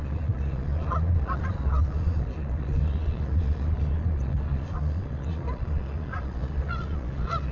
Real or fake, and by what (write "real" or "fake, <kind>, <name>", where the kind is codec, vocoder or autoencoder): fake, vocoder, Vocos